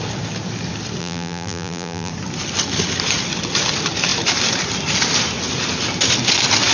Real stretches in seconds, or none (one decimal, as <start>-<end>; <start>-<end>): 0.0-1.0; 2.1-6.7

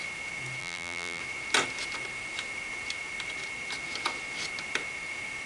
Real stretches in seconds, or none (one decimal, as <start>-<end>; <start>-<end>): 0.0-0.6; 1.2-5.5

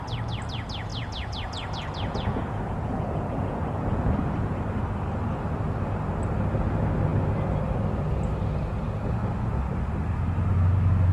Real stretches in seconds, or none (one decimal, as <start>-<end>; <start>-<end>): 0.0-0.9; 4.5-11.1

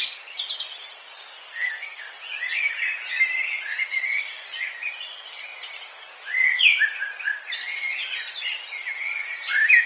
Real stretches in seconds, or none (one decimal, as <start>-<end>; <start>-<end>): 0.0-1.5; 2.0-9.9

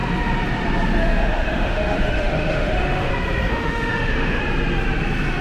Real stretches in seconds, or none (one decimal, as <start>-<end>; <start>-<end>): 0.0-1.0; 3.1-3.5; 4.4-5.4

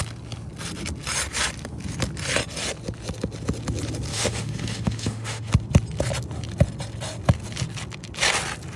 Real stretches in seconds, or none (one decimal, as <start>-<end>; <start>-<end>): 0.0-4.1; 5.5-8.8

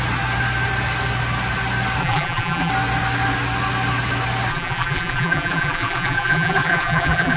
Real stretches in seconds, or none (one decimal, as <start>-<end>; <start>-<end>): 0.0-2.0; 2.7-4.5

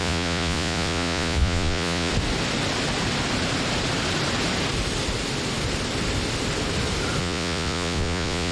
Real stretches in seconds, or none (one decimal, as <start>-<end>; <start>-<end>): 2.1-7.2